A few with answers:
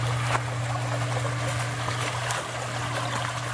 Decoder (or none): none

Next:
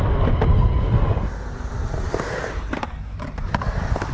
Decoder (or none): none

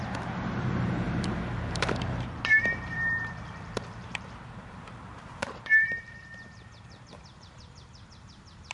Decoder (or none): vocoder, BigVGAN v2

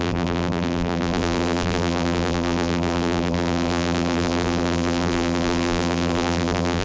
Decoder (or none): vocoder, BigVGAN v2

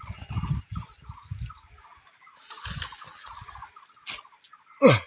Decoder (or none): none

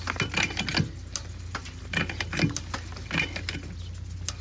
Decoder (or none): none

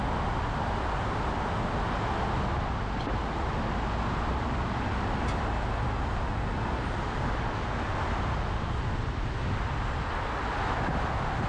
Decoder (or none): none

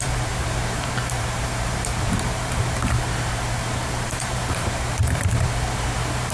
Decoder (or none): vocoder, BigVGAN v2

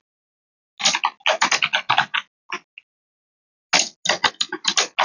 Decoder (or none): none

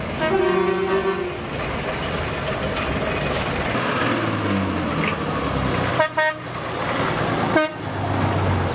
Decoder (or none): none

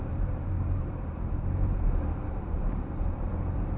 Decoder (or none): vocoder, BigVGAN v2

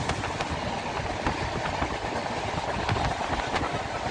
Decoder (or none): none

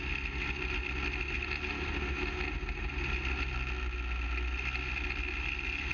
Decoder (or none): none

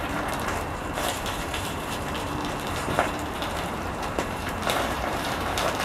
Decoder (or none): vocoder, BigVGAN v2